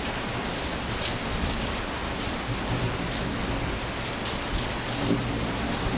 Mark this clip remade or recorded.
recorded